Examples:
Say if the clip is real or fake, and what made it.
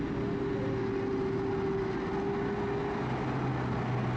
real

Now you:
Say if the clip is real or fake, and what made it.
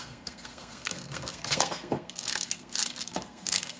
fake, codec, SNAC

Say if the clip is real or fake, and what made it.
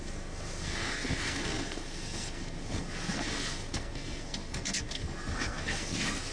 fake, codec, SNAC